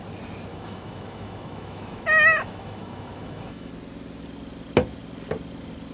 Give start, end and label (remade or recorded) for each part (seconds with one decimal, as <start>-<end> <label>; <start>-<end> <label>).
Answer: 0.0-0.5 recorded; 0.5-3.7 remade; 3.7-5.9 recorded